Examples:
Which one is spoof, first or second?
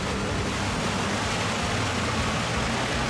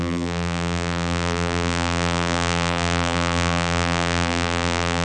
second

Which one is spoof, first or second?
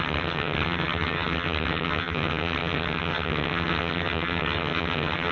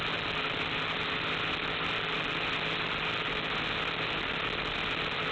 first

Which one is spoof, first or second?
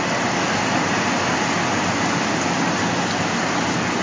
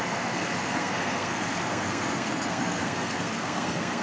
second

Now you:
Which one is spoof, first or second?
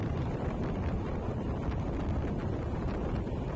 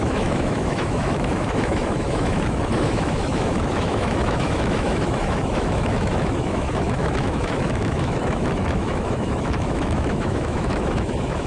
second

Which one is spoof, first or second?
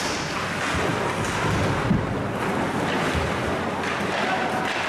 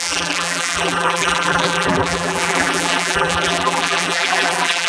second